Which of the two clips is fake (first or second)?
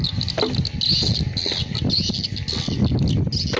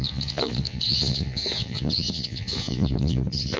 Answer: second